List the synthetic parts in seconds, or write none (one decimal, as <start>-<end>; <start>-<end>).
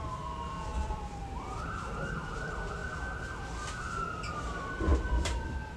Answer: 0.0-2.8; 4.0-5.8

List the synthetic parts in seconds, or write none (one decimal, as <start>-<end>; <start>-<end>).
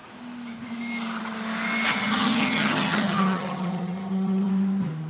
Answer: 1.9-4.5